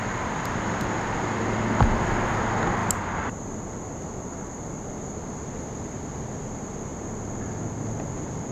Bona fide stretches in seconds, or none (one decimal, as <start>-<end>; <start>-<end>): 0.0-8.5